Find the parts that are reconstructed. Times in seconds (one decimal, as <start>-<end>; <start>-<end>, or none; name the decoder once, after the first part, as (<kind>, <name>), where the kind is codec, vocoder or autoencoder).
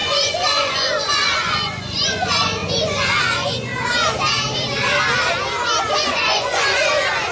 0.0-3.7 (vocoder, Vocos); 5.9-7.3